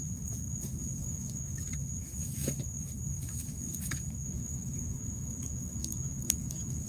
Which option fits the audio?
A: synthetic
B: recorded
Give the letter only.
A